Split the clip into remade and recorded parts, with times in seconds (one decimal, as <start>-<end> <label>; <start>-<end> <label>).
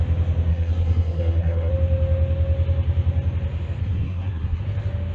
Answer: 0.0-0.5 recorded; 0.5-1.7 remade; 1.7-3.8 recorded; 3.8-4.6 remade; 4.6-5.1 recorded